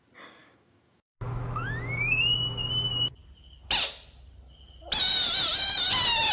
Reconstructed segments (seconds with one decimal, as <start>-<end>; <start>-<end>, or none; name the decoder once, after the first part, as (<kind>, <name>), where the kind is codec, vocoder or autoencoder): 0.4-1.7 (autoencoder, DAC-VAE)